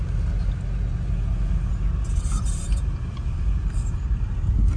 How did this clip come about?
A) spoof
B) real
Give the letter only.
B